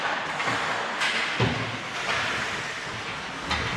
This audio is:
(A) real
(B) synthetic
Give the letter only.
A